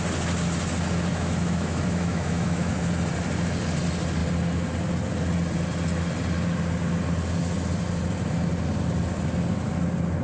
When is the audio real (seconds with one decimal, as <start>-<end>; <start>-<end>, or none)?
0.0-1.1; 2.7-10.2